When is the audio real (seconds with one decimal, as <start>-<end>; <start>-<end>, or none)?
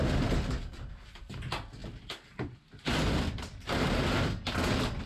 0.0-5.1